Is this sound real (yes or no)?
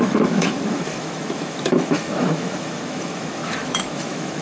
no